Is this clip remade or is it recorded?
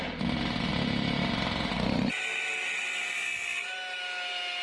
recorded